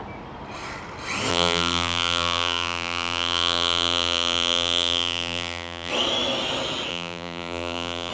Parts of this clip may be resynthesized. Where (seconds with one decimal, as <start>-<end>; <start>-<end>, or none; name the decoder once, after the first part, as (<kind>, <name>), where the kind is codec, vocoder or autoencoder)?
1.3-5.9 (vocoder, BigVGAN v2); 6.9-8.1